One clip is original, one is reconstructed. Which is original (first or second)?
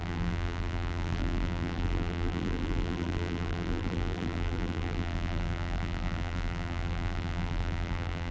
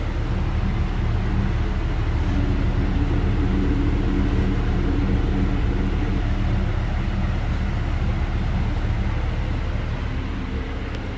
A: second